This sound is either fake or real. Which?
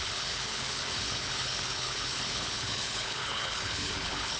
fake